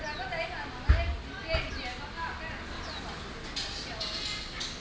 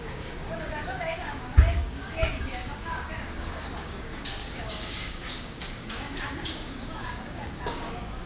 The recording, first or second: first